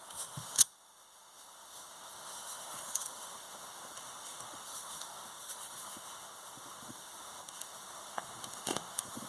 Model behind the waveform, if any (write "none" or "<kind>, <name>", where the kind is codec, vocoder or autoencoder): autoencoder, DAC-VAE